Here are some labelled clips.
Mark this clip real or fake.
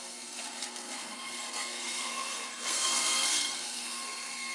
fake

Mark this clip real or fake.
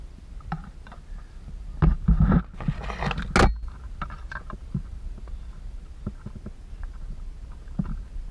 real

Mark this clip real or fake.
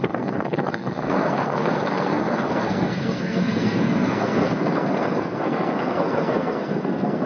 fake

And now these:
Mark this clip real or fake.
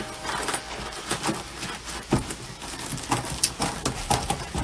real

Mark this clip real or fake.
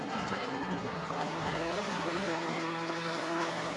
fake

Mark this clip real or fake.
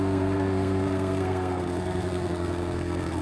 fake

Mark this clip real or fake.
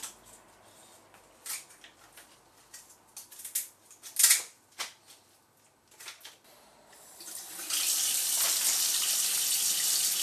real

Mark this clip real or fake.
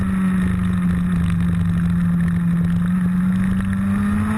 real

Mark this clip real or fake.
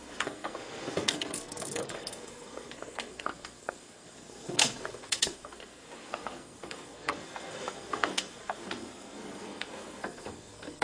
fake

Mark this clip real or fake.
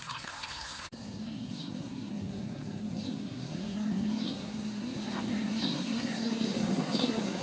fake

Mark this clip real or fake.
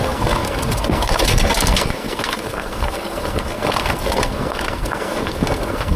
fake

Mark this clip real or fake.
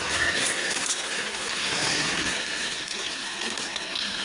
fake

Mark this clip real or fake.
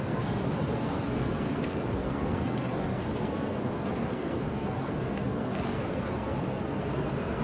fake